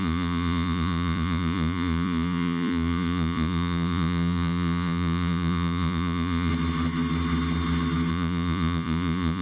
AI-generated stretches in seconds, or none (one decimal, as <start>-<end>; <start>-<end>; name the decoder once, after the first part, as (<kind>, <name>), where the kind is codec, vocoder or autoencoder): 0.0-6.5 (vocoder, Vocos); 8.1-9.4